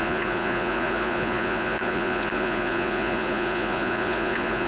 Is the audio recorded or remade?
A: remade